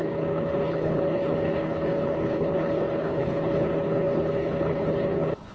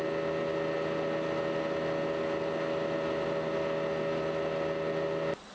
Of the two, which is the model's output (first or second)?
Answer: first